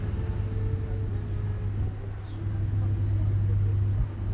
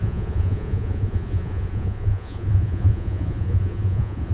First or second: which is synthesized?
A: second